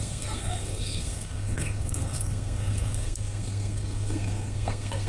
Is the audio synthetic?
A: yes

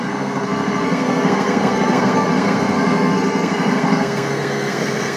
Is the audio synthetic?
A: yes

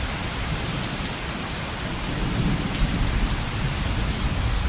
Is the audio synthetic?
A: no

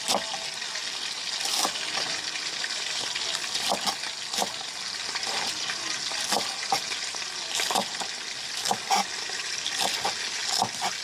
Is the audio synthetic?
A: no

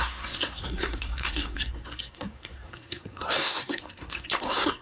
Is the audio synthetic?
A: yes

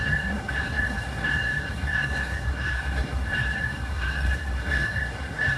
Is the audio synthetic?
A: yes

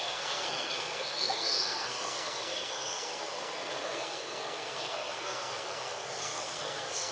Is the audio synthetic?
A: yes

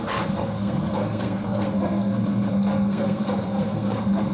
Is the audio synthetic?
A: yes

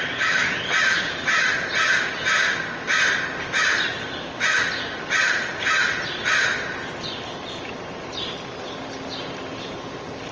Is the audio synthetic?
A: no